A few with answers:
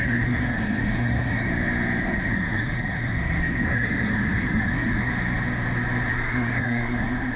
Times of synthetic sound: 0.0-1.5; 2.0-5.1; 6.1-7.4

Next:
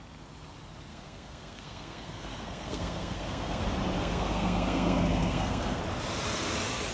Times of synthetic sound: 0.9-3.6; 4.0-5.8

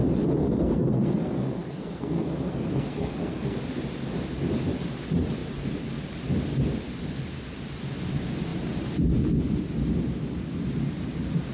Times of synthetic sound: 0.4-3.6

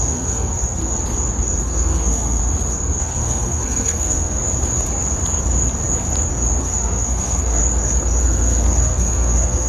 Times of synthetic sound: 0.0-0.8; 1.6-2.4; 3.0-4.4; 6.6-7.6; 8.2-9.7

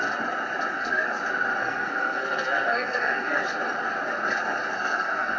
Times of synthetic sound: 0.7-1.2; 1.6-3.4; 4.7-5.4

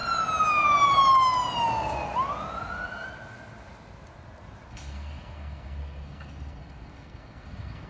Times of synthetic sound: 4.7-7.9

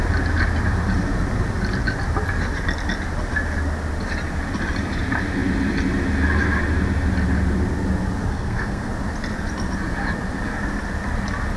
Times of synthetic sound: 8.3-8.9

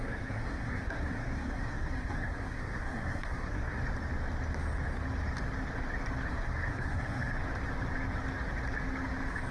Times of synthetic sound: 0.0-3.8; 6.3-7.3